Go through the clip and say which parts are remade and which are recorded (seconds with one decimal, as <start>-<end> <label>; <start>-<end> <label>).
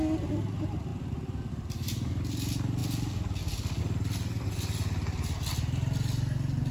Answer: 0.0-6.7 recorded